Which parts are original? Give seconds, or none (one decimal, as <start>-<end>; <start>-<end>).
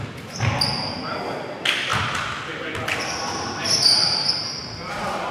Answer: 0.0-5.3